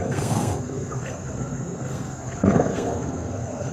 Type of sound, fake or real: fake